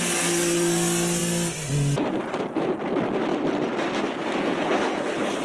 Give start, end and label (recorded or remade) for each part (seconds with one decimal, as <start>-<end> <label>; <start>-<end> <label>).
0.0-4.6 recorded; 4.6-5.4 remade

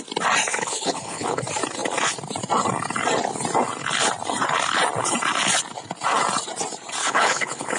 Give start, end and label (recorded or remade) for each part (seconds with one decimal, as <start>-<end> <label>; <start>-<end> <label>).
0.0-0.5 recorded; 0.5-1.4 remade; 1.4-7.0 recorded; 7.0-7.8 remade

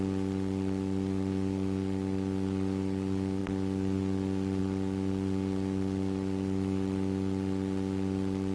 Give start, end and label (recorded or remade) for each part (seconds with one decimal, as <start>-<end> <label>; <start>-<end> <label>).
0.0-8.5 recorded

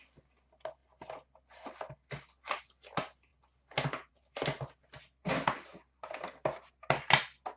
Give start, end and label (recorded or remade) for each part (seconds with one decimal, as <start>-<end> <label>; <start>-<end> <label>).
0.0-7.6 recorded

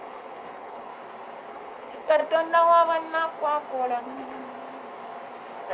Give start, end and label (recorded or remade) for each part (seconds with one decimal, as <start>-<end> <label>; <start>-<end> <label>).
0.0-0.9 remade; 0.9-1.5 recorded; 1.5-2.2 remade; 2.2-4.0 recorded; 4.0-4.4 remade; 4.4-5.7 recorded

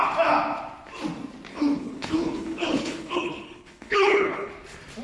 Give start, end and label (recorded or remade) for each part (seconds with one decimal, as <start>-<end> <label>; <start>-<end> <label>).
0.0-1.5 recorded; 1.5-4.5 remade; 4.5-5.0 recorded

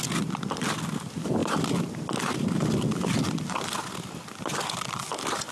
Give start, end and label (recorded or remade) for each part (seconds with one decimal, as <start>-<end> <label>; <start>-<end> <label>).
0.0-5.5 recorded

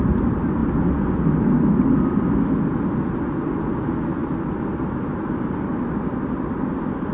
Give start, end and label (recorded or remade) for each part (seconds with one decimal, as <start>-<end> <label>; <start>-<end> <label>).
0.0-7.1 recorded